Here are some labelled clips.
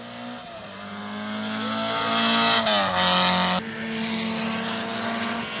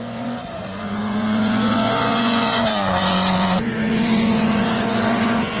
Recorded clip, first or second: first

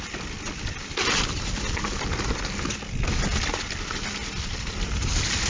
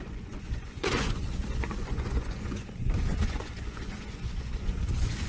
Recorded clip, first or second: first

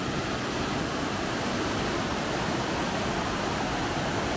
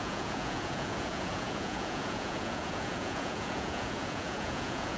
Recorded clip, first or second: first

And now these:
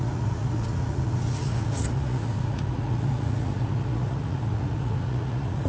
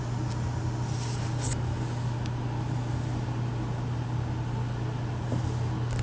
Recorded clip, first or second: second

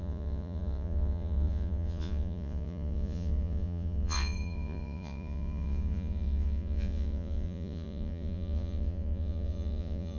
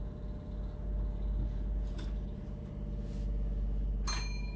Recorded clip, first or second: second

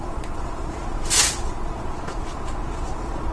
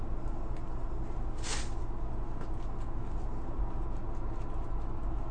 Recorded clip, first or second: second